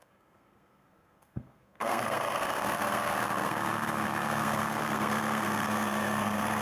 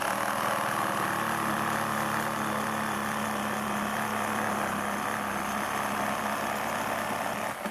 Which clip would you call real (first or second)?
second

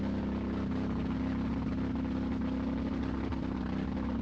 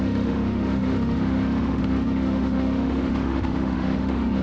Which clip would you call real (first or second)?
first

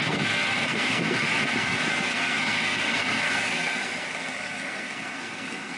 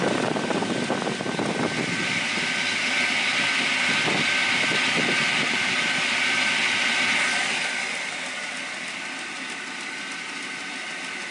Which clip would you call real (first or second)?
second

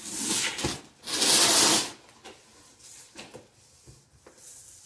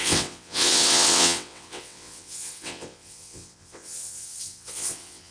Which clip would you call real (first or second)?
first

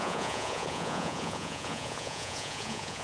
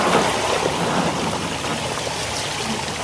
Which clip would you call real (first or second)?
second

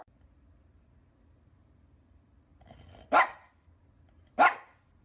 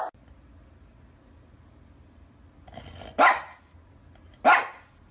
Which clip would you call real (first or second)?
second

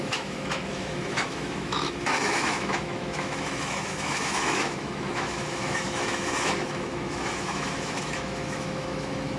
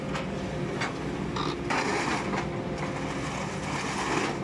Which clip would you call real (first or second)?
second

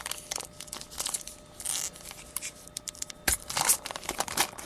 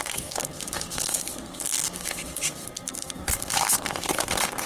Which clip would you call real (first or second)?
first